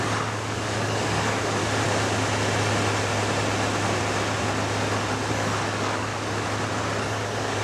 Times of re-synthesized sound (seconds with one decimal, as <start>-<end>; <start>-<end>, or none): 0.0-1.6; 5.3-6.1; 7.0-7.6